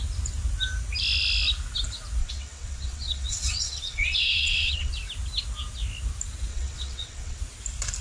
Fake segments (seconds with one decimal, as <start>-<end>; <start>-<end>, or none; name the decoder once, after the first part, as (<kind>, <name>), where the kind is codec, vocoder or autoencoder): 2.2-4.9 (vocoder, WaveNeXt); 6.5-7.4